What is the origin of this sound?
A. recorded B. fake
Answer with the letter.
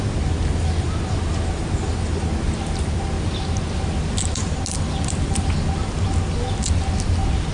A